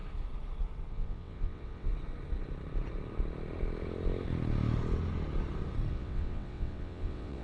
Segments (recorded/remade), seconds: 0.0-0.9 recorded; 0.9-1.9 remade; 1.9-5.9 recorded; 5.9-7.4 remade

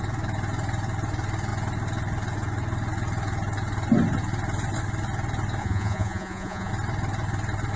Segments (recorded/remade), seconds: 0.0-5.6 recorded; 5.6-6.7 remade; 6.7-7.8 recorded

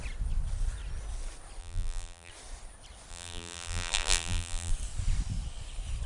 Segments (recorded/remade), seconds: 0.0-1.6 recorded; 1.6-2.3 remade; 2.3-3.1 recorded; 3.1-4.7 remade; 4.7-6.1 recorded